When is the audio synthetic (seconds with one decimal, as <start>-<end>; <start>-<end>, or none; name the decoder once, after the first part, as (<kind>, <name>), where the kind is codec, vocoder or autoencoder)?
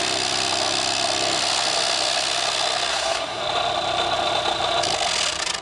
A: 2.9-3.4 (codec, SNAC)